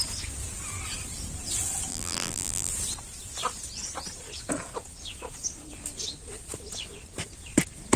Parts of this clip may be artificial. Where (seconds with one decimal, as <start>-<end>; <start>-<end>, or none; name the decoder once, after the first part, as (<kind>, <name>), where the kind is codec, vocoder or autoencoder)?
1.9-2.7 (vocoder, BigVGAN v2)